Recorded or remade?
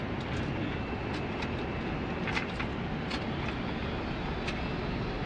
recorded